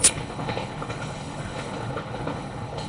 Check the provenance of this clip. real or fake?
fake